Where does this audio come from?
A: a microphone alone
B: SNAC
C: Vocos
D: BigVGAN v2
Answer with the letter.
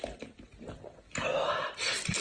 A